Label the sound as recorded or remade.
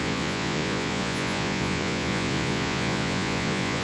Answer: remade